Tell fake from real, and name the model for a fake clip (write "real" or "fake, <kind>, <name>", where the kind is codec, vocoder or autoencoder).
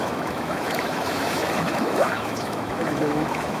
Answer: fake, autoencoder, DAC-VAE